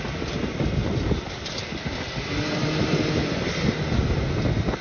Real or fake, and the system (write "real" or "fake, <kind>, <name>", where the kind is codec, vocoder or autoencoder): real